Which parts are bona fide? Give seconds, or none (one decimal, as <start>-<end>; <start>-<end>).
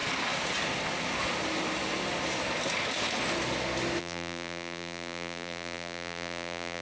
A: 0.0-4.0